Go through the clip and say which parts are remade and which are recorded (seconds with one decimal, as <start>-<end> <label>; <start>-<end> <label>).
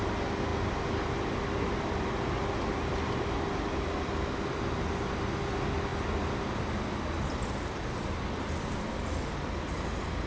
0.0-10.3 recorded